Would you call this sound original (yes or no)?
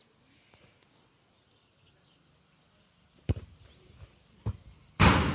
yes